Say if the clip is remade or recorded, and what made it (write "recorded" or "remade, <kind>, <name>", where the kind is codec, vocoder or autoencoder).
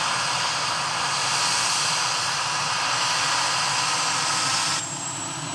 recorded